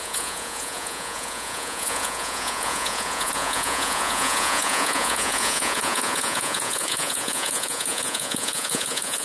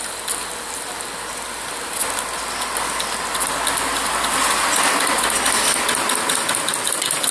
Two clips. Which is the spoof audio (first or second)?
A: first